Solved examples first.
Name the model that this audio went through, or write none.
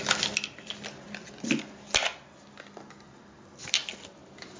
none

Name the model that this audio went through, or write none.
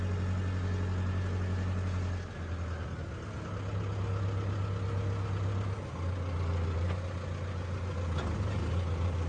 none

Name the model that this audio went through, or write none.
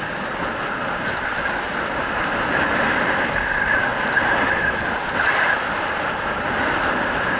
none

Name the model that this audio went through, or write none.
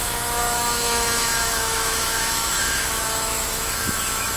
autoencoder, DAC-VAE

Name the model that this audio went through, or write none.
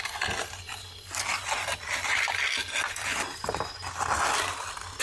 none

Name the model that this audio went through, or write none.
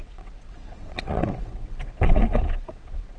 vocoder, WaveNeXt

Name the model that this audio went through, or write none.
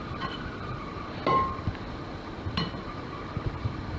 none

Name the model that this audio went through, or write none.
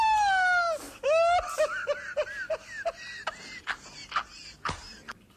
none